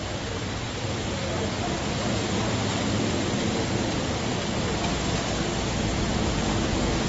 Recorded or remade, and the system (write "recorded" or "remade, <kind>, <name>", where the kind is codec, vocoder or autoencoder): recorded